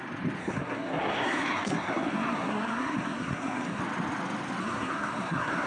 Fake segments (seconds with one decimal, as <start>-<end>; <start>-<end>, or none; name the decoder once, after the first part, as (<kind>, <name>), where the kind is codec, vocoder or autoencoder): 0.4-3.8 (codec, SNAC); 4.6-5.7